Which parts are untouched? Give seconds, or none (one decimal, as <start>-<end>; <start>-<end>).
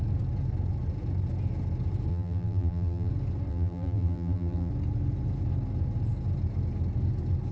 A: 0.0-2.1; 3.1-3.5; 4.7-7.5